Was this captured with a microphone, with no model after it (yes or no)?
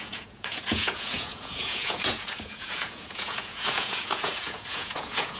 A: no